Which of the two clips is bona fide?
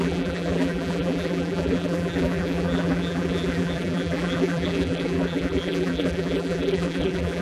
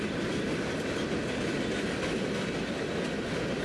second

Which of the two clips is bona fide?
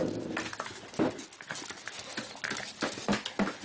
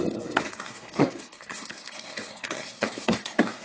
first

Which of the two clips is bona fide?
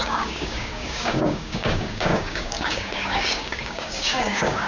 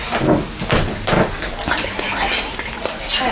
second